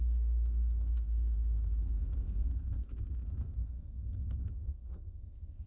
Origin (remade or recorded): remade